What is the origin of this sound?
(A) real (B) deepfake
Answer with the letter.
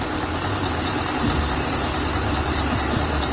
A